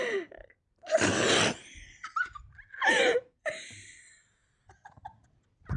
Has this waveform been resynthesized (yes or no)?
no